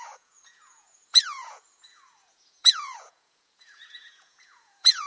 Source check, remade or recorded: remade